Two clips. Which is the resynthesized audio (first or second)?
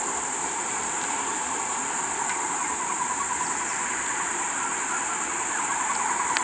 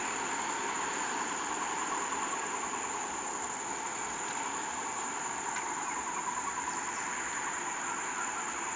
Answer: first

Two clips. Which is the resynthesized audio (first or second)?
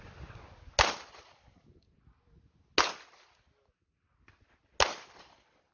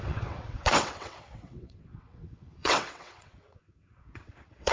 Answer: second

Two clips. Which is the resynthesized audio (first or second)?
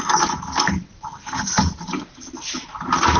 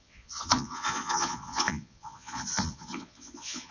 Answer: second